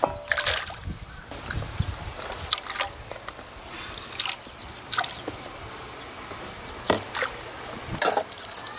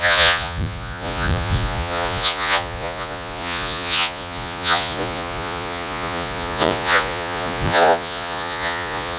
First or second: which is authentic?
first